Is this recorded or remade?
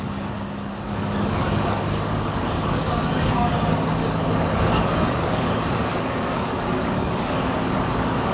remade